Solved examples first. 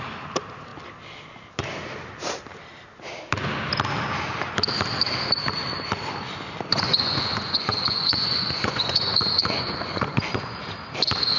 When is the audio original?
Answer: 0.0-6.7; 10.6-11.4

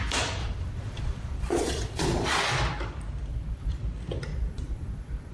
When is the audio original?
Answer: 0.0-0.4; 2.5-3.3; 3.8-4.3

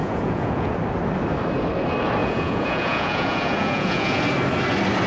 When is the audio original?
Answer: 0.7-2.2; 4.2-5.1

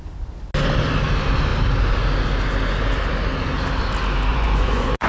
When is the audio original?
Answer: 0.0-4.3

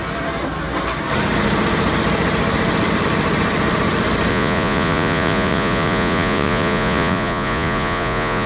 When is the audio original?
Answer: 0.0-4.3